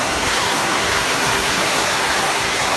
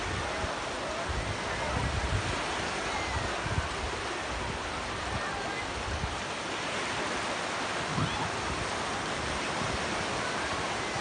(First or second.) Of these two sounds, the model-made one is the first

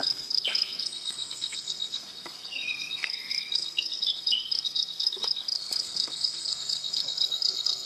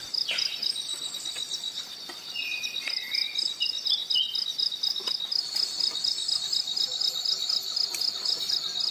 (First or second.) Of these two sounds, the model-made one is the first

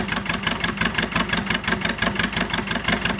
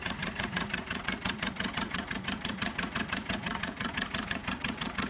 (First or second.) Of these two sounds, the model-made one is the second